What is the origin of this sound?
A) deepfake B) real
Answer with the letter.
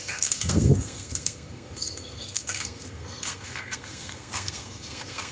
A